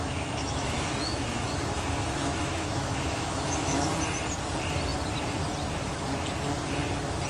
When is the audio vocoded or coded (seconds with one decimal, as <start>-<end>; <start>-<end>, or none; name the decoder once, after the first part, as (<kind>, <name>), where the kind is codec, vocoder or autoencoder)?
0.0-3.9 (autoencoder, DAC-VAE)